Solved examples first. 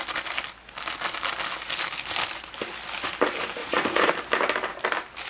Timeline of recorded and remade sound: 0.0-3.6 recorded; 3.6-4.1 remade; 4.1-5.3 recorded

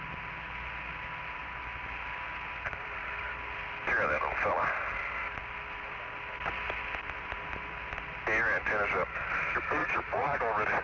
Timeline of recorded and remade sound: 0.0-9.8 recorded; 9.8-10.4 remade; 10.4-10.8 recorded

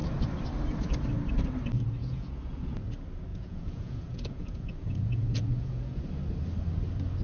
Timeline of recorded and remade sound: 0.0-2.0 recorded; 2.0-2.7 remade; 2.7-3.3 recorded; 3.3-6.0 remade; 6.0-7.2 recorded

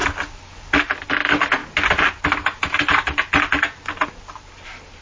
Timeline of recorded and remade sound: 0.0-5.0 recorded